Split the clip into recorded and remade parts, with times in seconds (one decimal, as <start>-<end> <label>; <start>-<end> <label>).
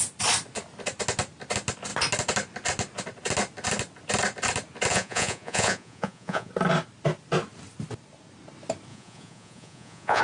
0.0-4.9 recorded; 4.9-6.5 remade; 6.5-8.9 recorded; 8.9-10.2 remade